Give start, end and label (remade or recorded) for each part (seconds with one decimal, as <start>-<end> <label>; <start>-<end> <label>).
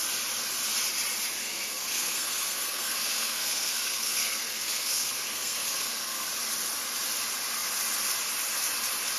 0.0-1.4 recorded; 1.4-6.3 remade; 6.3-9.2 recorded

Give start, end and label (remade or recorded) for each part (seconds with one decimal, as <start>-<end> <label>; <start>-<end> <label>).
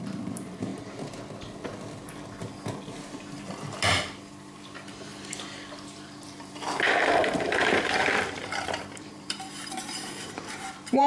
0.0-0.7 remade; 0.7-4.3 recorded; 4.3-11.1 remade